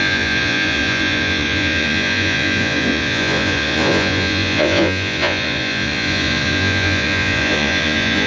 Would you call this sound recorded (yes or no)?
no